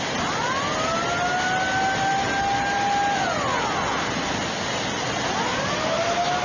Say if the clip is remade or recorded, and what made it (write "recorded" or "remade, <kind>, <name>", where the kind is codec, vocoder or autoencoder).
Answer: recorded